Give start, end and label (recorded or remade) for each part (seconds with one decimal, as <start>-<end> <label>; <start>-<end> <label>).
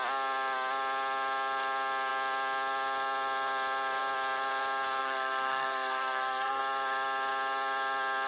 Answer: 0.0-5.0 recorded; 5.0-6.6 remade; 6.6-8.3 recorded